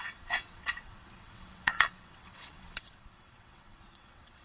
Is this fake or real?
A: fake